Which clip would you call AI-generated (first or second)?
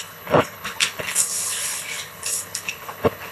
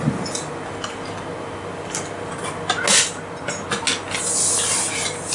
first